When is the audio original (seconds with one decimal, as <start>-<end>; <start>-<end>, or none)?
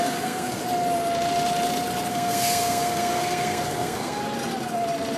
0.6-2.1; 4.2-5.2